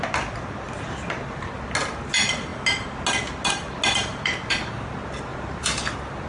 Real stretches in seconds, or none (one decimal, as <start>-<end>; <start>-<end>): 0.0-4.1; 4.6-5.3; 5.8-6.3